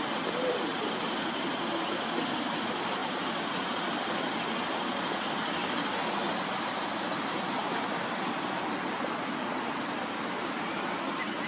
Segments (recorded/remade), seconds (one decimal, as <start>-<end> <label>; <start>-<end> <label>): 0.0-11.5 recorded